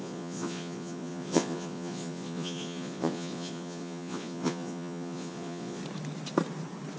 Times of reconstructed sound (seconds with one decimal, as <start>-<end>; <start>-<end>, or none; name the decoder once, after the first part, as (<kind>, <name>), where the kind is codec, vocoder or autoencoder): 0.0-5.8 (vocoder, Vocos)